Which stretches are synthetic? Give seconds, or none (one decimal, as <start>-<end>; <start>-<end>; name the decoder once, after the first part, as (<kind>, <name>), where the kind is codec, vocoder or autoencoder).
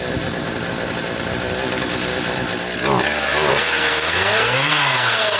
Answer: 3.5-5.4 (codec, SNAC)